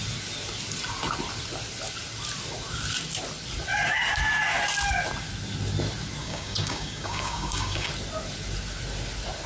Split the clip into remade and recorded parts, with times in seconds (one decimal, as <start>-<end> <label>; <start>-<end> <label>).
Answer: 0.0-6.2 recorded; 6.2-7.9 remade; 7.9-9.5 recorded